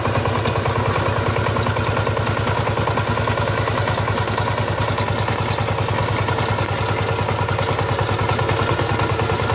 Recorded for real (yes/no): yes